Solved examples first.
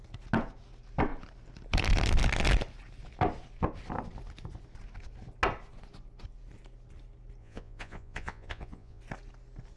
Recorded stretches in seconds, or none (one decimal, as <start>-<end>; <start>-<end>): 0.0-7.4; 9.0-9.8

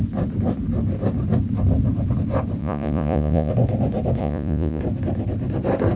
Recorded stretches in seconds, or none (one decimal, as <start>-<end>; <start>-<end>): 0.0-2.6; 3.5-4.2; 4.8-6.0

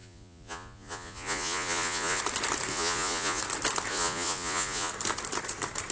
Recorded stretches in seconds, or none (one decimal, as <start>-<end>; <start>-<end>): 2.2-2.7; 3.4-3.9; 4.9-5.9

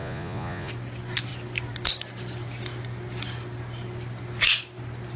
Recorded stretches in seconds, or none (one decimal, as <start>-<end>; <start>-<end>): 0.7-5.2

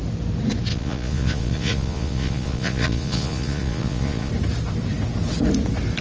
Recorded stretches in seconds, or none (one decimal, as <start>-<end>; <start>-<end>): 0.0-0.7; 4.3-6.0

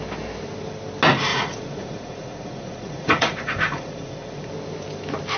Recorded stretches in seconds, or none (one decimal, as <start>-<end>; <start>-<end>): 0.0-1.3; 4.5-5.4

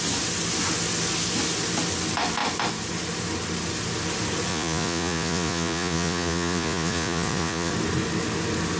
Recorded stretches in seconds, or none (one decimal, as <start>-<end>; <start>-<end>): 0.0-4.5; 7.7-8.8